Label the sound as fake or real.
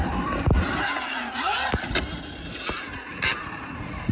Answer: real